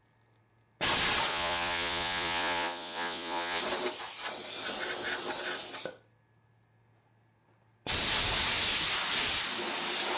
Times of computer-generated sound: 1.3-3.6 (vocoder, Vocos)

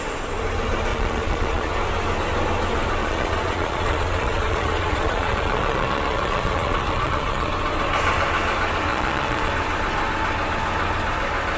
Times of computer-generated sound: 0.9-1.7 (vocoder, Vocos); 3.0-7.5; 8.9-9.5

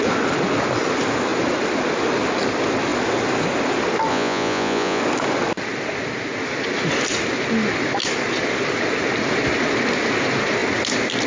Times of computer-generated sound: 4.1-5.0 (vocoder, Vocos)

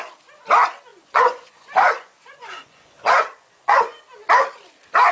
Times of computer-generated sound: 0.9-4.0 (vocoder, Vocos)

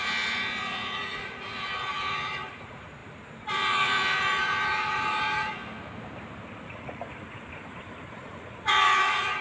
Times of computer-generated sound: 0.0-5.6 (vocoder, Vocos); 6.6-7.0; 8.1-9.4

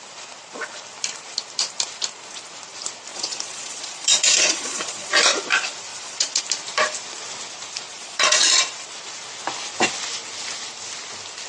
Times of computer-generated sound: 3.1-5.1 (vocoder, Vocos); 5.9-6.4; 7.9-8.4

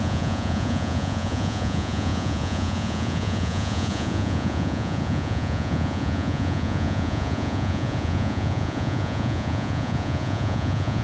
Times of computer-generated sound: 0.0-11.0 (vocoder, Vocos)